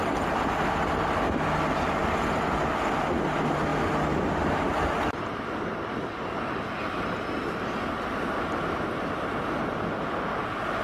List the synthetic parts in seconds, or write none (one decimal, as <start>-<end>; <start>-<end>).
none